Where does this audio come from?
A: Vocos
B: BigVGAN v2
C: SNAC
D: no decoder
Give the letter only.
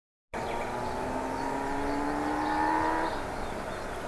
D